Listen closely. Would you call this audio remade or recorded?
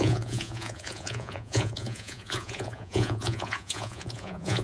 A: remade